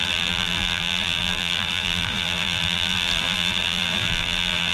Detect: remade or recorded remade